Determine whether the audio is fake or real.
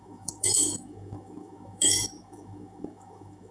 fake